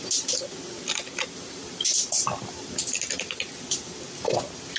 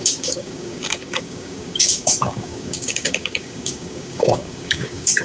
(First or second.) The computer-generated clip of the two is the second